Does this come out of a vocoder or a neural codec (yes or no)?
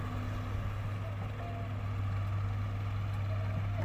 no